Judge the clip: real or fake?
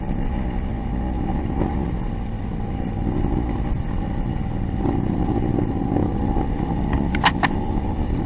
real